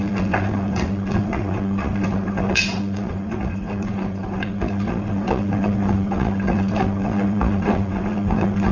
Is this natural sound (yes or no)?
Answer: no